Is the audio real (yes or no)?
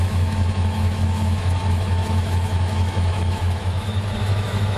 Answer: no